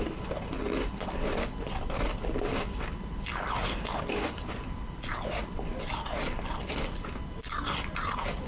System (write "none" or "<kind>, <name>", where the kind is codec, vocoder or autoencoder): none